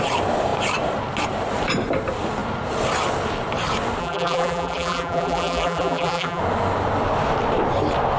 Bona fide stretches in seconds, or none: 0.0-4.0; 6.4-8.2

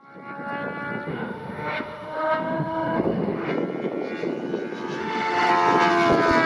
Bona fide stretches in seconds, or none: 0.0-1.1; 3.5-5.0; 5.5-6.5

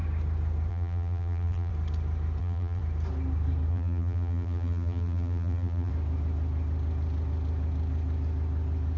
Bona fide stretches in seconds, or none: 0.0-0.7; 1.7-2.4; 2.8-3.7; 5.9-9.0

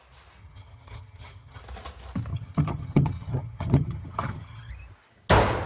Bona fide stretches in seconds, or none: 0.0-0.4; 1.6-2.3; 4.7-5.7

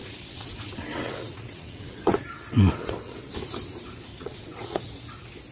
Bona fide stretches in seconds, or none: 3.3-4.1; 4.8-5.5